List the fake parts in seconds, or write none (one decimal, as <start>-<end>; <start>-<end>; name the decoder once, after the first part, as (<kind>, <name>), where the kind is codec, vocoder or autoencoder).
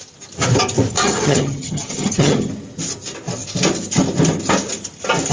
1.0-2.5 (vocoder, HiFi-GAN)